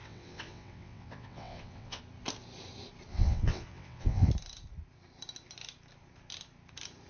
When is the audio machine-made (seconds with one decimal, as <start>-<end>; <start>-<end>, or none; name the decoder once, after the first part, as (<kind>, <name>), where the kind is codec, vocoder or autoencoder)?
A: 0.0-2.0 (vocoder, WaveNeXt); 3.1-4.3